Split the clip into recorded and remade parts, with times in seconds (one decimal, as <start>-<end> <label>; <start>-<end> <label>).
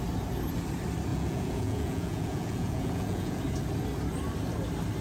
0.0-1.1 recorded; 1.1-3.4 remade; 3.4-5.0 recorded